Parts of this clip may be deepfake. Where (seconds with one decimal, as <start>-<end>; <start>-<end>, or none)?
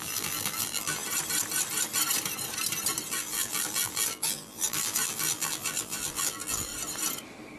0.0-1.0; 3.1-6.7